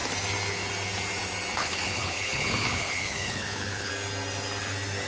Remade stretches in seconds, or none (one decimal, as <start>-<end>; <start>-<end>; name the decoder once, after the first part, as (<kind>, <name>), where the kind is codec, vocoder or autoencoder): 1.6-3.9 (codec, HILCodec)